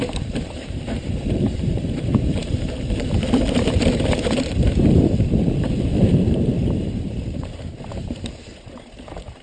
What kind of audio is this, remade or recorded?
remade